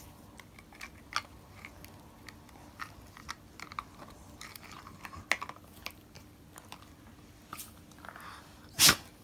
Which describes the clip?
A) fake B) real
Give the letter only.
B